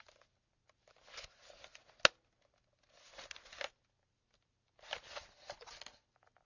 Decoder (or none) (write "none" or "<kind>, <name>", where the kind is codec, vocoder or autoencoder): none